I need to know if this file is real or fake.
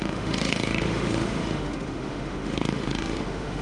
fake